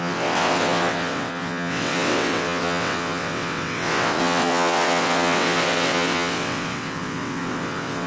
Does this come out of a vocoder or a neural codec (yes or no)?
yes